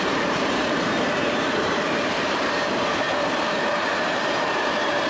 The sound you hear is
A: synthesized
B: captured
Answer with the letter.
A